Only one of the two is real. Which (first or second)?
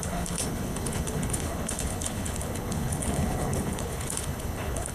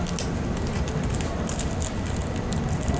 second